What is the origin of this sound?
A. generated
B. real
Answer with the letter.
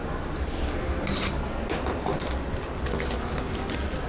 B